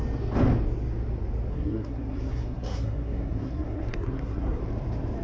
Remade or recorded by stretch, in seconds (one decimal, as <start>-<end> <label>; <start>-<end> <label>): 0.0-1.5 recorded; 1.5-4.6 remade; 4.6-5.2 recorded